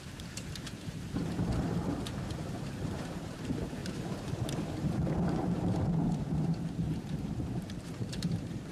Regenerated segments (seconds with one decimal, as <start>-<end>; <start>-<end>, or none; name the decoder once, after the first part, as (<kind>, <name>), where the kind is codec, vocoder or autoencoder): 0.0-8.7 (vocoder, BigVGAN v2)